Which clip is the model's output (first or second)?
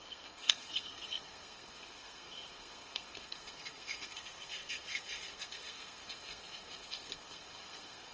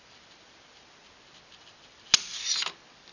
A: first